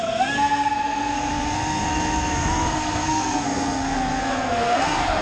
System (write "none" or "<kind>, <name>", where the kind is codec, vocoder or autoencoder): codec, SNAC